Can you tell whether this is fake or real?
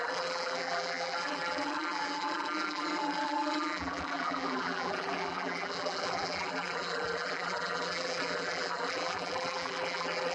fake